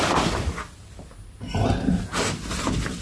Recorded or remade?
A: recorded